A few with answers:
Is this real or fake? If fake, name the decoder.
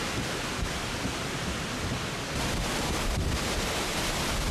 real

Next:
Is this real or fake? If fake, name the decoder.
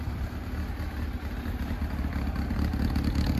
real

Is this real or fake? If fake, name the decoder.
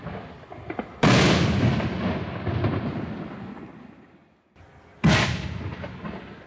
real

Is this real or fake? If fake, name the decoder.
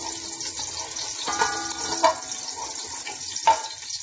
real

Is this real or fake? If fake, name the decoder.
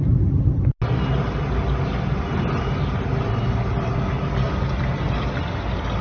real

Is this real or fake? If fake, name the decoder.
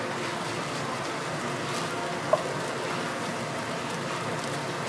real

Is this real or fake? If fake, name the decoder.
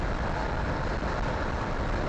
fake, vocoder, BigVGAN v2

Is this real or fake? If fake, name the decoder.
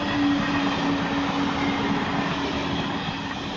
real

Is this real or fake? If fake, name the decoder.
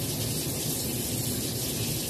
real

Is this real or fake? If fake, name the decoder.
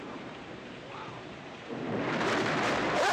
fake, vocoder, BigVGAN v2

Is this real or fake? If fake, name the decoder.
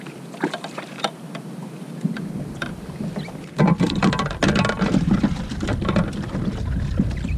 fake, vocoder, BigVGAN v2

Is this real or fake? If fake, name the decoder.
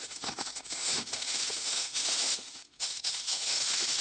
fake, autoencoder, DAC-VAE